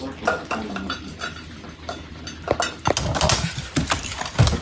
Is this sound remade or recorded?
recorded